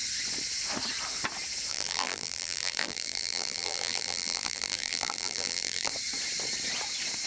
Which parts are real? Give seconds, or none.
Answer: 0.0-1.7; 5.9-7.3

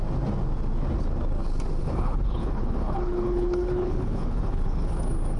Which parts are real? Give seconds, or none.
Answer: 0.0-1.8; 5.0-5.4

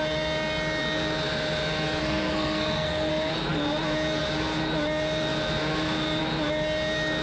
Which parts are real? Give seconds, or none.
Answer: 0.0-2.0; 3.1-7.2